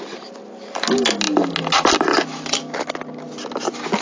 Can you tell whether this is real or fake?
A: real